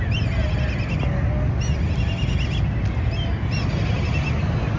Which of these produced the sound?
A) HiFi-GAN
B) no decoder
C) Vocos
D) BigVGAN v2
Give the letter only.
B